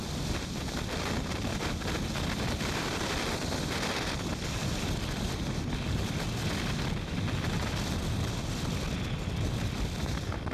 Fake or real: real